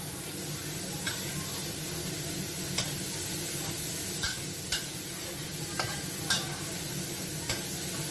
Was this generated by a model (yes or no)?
no